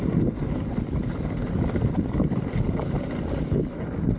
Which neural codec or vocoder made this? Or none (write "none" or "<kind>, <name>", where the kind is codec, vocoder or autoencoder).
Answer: none